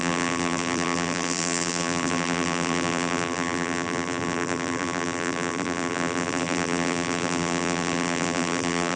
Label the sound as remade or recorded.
remade